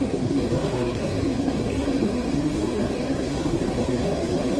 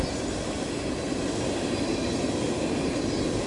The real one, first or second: second